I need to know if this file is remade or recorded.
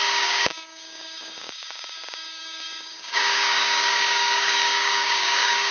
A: remade